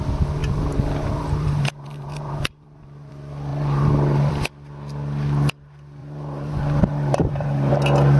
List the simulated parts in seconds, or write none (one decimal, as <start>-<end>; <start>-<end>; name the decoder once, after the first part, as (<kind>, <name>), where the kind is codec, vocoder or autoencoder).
0.4-3.1 (vocoder, BigVGAN v2); 3.5-4.3; 6.0-7.7

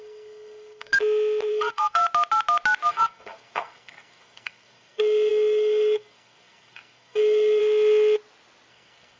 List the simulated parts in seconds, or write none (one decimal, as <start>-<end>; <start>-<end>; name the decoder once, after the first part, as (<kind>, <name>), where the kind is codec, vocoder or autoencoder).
0.0-0.9 (codec, SNAC); 1.5-2.0; 2.9-7.6; 8.7-9.2

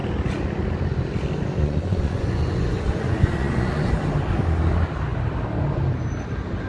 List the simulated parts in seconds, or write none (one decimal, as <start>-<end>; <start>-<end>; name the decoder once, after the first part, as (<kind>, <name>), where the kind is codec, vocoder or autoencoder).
1.6-3.9 (vocoder, Vocos)

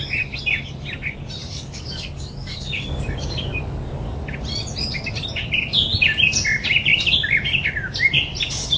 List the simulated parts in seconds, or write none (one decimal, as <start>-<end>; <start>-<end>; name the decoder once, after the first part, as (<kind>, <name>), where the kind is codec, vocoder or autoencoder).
1.4-4.2 (codec, DAC)

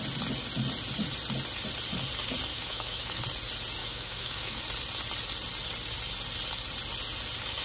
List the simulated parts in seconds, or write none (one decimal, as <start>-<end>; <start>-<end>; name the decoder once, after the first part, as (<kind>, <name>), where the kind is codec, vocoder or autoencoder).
2.5-3.2 (autoencoder, DAC-VAE); 3.8-4.6

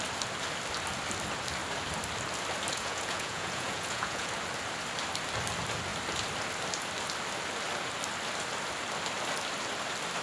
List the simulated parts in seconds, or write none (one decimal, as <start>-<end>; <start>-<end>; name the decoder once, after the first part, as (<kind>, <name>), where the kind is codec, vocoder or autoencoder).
2.7-4.3 (vocoder, Vocos)

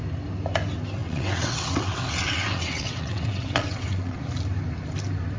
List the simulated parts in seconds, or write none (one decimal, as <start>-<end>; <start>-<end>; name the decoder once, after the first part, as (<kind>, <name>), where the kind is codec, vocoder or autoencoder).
1.0-4.2 (vocoder, WaveNeXt)